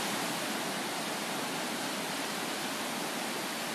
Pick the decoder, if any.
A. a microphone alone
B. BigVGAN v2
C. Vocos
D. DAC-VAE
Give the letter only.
A